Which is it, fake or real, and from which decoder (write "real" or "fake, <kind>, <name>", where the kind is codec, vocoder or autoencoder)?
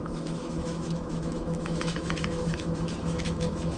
fake, autoencoder, DAC-VAE